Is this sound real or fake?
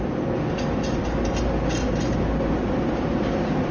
real